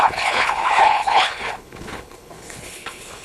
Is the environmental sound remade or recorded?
remade